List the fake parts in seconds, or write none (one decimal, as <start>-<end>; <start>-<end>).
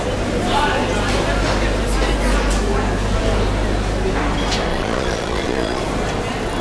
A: 4.7-5.8